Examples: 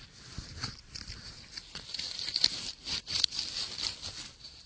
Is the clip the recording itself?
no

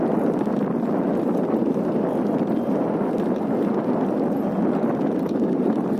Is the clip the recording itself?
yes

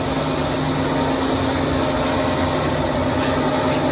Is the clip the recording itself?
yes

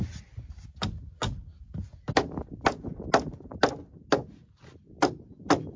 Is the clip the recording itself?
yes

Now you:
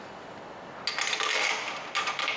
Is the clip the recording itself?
yes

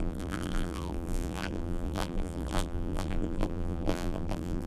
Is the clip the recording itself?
no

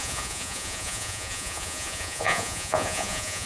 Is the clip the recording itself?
no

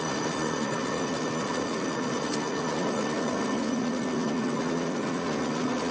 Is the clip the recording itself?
no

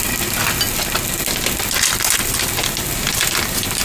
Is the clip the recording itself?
yes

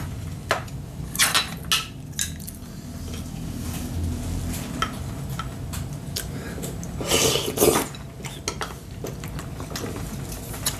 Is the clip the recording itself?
yes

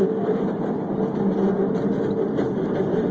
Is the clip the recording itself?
no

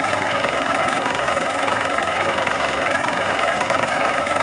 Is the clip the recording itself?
no